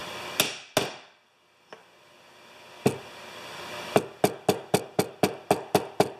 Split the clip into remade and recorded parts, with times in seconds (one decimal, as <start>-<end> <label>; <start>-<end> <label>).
0.0-6.2 recorded